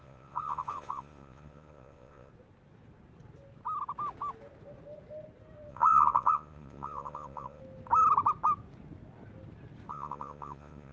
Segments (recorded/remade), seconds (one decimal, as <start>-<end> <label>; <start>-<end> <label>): 0.0-2.3 remade; 2.3-5.7 recorded; 5.7-7.6 remade; 7.6-9.9 recorded; 9.9-10.9 remade